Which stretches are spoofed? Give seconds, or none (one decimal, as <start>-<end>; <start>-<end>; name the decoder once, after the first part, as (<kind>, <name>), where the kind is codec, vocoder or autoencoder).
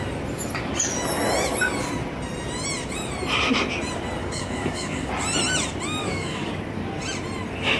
4.2-5.1 (codec, DAC); 6.0-6.5